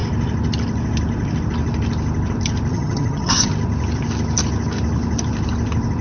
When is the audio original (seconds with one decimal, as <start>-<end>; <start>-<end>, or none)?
0.0-2.7; 3.5-6.0